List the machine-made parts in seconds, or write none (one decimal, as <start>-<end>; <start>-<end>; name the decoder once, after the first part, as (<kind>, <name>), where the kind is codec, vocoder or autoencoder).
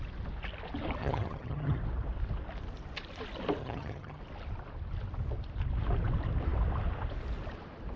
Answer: 1.0-1.8 (vocoder, HiFi-GAN); 3.6-4.2